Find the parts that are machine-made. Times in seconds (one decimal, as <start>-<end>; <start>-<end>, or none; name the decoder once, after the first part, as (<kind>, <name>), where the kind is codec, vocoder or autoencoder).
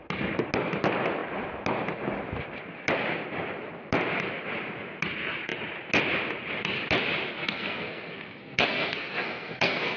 7.4-10.0 (codec, SNAC)